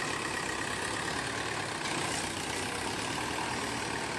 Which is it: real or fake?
real